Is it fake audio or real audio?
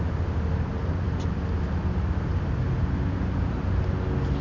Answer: real